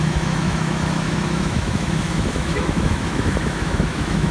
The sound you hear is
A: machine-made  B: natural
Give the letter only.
A